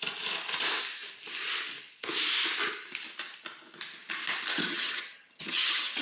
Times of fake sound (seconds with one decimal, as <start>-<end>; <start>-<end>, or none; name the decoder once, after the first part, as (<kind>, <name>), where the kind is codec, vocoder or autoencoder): 4.5-6.0 (vocoder, HiFi-GAN)